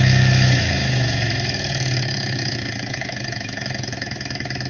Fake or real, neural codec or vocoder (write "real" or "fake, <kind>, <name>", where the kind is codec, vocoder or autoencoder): fake, autoencoder, DAC-VAE